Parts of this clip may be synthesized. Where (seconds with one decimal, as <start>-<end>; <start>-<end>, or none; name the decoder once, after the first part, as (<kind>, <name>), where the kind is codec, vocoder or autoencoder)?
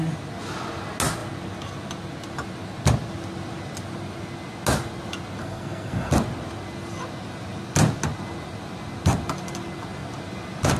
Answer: 5.4-6.1 (codec, SNAC)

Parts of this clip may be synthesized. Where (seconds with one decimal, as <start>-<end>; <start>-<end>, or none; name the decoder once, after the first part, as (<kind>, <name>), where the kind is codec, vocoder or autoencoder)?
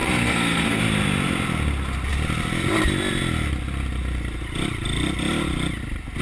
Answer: 0.0-0.8 (codec, SNAC)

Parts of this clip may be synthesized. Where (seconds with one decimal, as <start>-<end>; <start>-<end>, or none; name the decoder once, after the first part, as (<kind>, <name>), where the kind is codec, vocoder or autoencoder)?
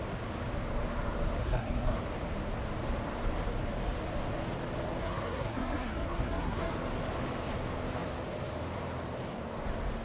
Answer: 1.4-2.0 (codec, SNAC); 5.0-6.7